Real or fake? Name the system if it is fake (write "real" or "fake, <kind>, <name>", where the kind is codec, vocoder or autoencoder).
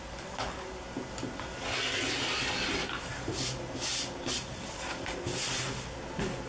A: real